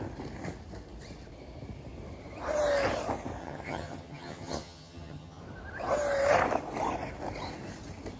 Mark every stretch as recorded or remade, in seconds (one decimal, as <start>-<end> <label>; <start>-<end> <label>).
0.0-3.4 recorded; 3.4-5.4 remade; 5.4-8.2 recorded